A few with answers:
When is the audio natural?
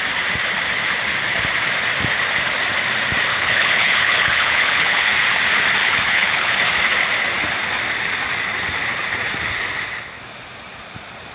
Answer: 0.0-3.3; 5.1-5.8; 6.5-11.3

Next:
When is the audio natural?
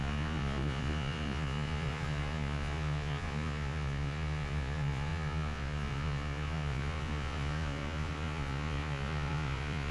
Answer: none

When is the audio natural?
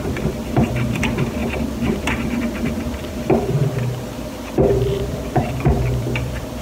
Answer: 1.4-2.3; 3.6-4.3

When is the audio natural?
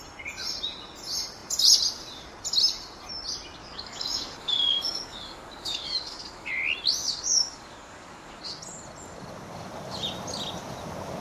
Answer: 0.0-3.6; 6.5-7.0; 8.4-11.2